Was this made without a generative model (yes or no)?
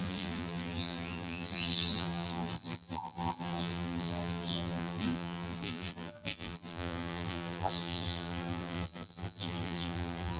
no